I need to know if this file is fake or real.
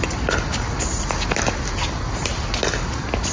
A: real